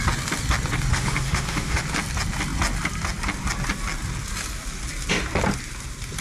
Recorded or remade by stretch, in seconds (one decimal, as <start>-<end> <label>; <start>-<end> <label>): 0.0-0.9 recorded; 0.9-1.8 remade; 1.8-6.2 recorded